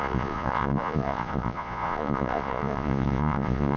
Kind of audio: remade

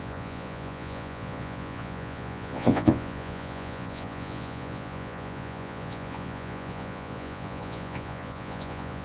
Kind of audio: remade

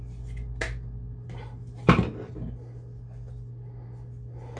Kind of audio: recorded